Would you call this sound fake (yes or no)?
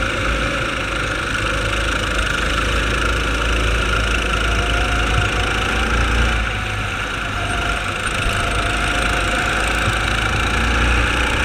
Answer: no